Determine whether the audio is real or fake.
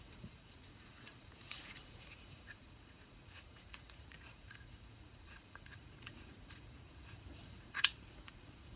fake